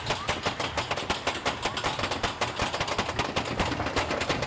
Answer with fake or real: real